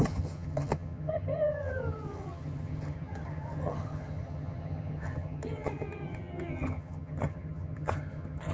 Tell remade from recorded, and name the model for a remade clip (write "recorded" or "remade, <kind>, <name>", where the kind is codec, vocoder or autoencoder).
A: remade, vocoder, HiFi-GAN